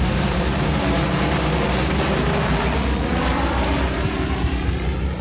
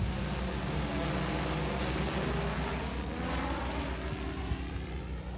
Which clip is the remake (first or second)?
first